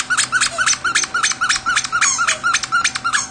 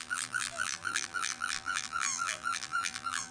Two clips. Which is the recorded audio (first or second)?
first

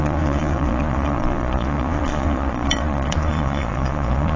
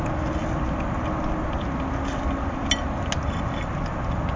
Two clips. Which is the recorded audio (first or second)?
second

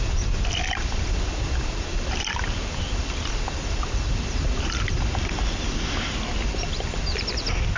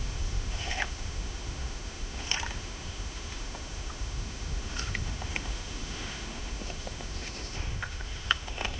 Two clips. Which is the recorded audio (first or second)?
first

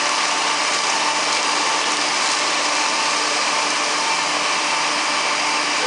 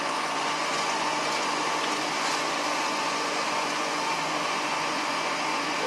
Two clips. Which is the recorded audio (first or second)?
first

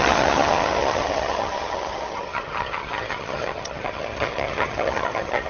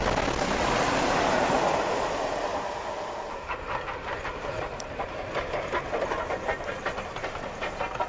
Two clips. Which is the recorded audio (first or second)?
second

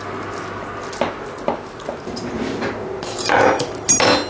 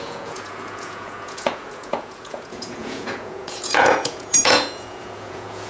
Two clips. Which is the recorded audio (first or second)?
first